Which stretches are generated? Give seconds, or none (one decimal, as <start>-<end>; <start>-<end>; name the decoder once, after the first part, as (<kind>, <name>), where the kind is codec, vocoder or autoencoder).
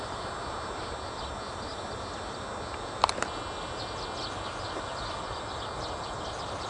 none